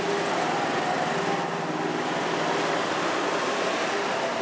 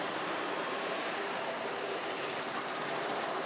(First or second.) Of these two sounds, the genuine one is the first